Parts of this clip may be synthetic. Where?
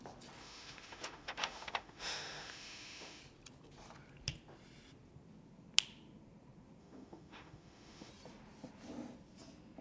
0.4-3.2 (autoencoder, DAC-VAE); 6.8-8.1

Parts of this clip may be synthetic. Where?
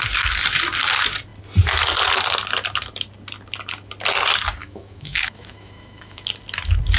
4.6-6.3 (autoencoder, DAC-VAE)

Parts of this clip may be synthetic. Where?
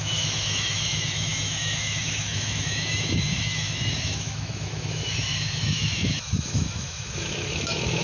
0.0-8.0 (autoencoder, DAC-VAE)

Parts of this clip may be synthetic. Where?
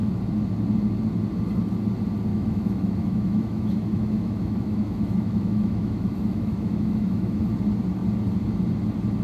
2.3-7.4 (autoencoder, DAC-VAE)